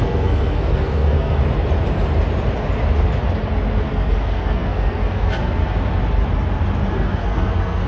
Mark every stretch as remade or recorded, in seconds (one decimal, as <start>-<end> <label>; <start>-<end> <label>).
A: 0.0-1.4 remade; 1.4-3.9 recorded; 3.9-5.6 remade; 5.6-6.9 recorded; 6.9-7.9 remade